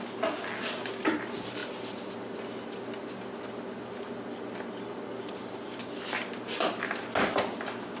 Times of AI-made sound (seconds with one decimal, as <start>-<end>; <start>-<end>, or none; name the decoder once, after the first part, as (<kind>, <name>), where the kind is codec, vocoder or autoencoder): none